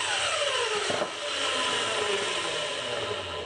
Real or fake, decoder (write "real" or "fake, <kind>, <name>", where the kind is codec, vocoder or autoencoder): real